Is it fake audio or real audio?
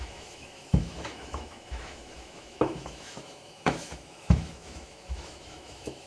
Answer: fake